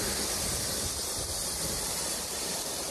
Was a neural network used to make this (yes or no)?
no